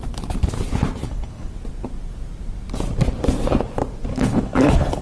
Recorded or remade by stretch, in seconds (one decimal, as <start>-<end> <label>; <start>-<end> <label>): 0.0-1.0 recorded; 1.0-1.5 remade; 1.5-4.1 recorded; 4.1-5.0 remade